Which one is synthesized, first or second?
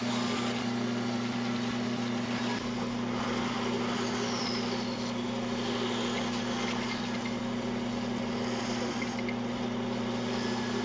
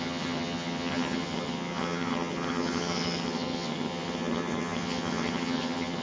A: second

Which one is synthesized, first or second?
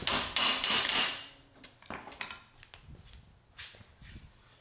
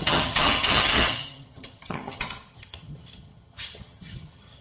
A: second